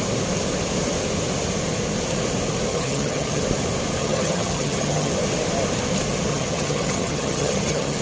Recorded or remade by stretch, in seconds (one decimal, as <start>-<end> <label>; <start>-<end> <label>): 0.0-2.7 recorded; 2.7-3.4 remade; 3.4-4.0 recorded; 4.0-5.1 remade; 5.1-6.3 recorded; 6.3-8.0 remade

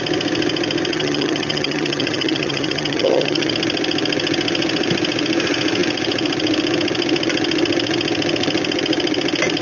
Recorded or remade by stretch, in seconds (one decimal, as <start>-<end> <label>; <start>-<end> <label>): 0.0-0.9 recorded; 0.9-3.5 remade; 3.5-9.6 recorded

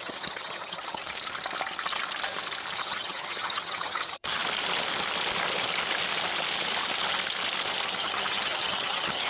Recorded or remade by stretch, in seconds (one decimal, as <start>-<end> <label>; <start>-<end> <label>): 0.0-1.0 remade; 1.0-2.8 recorded; 2.8-4.4 remade; 4.4-7.9 recorded; 7.9-9.3 remade

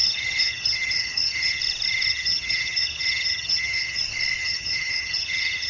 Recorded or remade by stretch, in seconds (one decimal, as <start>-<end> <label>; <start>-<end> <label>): 0.0-1.6 remade; 1.6-2.1 recorded; 2.1-4.0 remade; 4.0-4.4 recorded; 4.4-5.7 remade

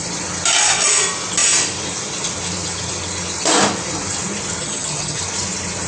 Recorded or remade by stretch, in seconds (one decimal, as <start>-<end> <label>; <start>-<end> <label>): 0.0-4.6 recorded; 4.6-5.2 remade; 5.2-5.9 recorded

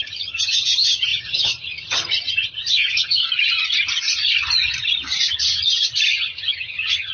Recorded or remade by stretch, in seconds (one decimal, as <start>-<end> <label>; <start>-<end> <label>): 0.0-3.2 remade; 3.2-6.1 recorded; 6.1-7.1 remade

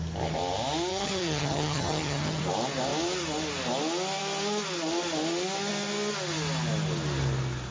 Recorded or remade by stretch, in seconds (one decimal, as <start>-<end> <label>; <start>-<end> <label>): 0.0-0.9 recorded; 0.9-2.4 remade; 2.4-7.7 recorded

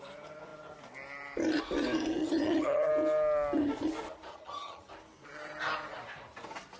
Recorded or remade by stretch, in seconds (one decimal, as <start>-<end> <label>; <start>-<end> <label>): 0.0-2.2 recorded; 2.2-2.9 remade; 2.9-4.3 recorded; 4.3-4.9 remade; 4.9-6.8 recorded